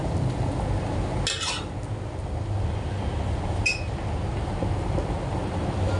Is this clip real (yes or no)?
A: yes